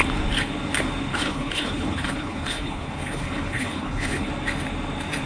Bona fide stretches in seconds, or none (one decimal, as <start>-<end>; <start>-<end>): 0.0-1.1; 4.3-5.3